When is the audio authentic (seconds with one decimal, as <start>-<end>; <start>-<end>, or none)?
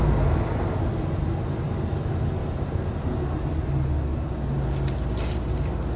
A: 0.0-6.0